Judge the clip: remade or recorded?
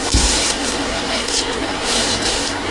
remade